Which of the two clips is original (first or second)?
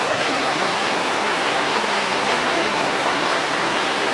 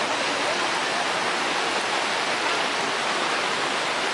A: second